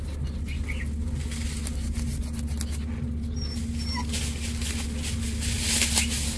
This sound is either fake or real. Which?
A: real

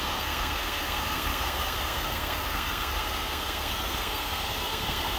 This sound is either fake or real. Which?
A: fake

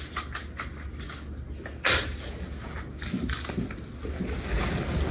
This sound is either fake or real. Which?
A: real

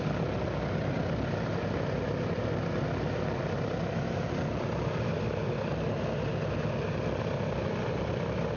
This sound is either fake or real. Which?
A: real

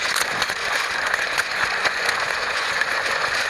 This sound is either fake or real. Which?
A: fake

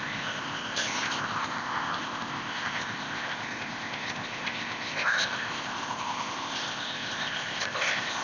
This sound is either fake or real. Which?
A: fake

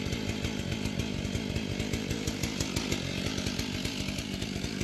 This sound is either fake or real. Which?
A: real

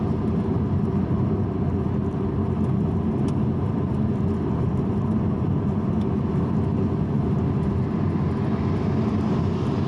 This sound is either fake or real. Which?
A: real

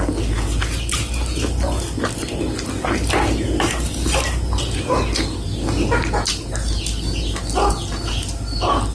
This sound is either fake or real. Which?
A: real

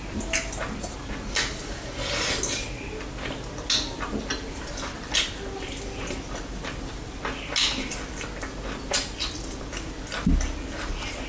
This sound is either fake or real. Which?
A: real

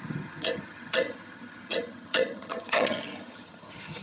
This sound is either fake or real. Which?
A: fake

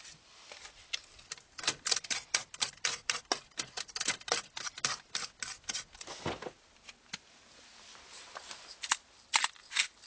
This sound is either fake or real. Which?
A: real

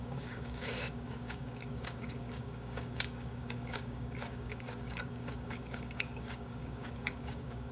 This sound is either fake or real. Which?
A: fake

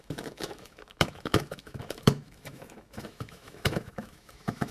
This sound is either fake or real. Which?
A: fake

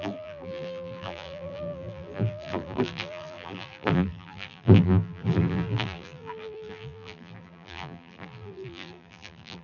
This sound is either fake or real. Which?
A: fake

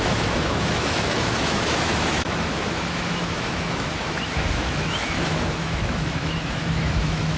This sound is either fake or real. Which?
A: fake